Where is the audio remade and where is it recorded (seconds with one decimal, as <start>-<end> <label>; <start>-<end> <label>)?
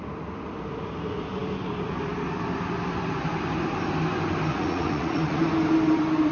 0.0-4.5 recorded; 4.5-5.4 remade; 5.4-6.3 recorded